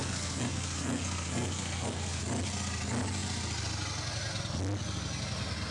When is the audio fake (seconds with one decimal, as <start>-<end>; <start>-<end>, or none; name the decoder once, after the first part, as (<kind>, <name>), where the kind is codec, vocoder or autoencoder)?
0.0-2.2 (codec, SNAC)